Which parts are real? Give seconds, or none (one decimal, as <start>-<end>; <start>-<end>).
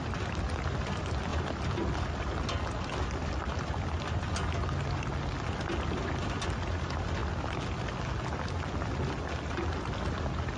0.0-10.6